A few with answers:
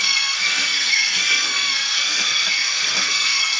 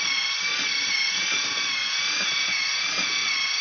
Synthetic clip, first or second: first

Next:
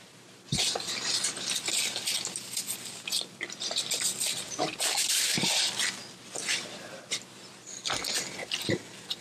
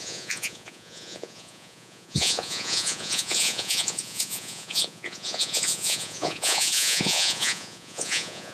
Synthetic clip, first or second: second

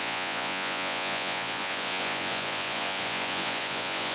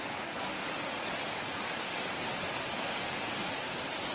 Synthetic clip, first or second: first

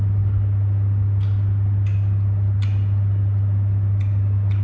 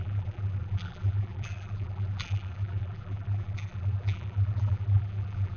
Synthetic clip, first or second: second